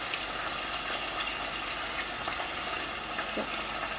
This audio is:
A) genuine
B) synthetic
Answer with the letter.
A